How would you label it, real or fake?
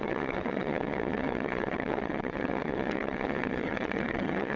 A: fake